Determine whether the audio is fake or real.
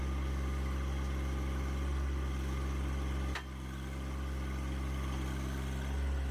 real